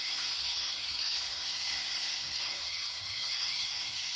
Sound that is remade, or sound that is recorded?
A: remade